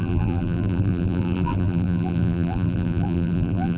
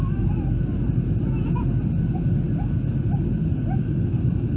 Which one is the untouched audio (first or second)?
second